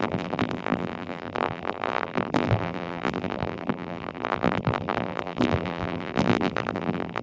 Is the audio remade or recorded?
remade